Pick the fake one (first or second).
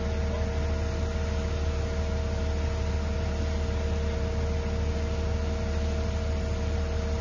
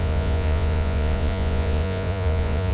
second